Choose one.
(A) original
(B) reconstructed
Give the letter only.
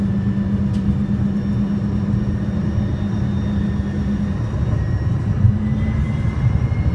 A